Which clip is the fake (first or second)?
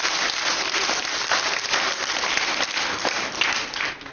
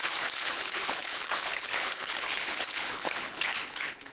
second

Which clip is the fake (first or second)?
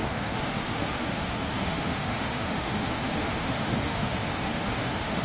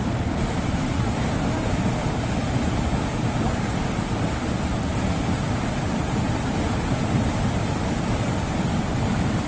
first